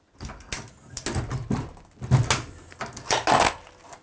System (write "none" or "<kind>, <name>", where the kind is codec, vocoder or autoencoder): none